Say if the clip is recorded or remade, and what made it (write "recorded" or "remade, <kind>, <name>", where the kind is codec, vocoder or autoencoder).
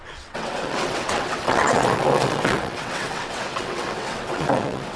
remade, vocoder, WaveNeXt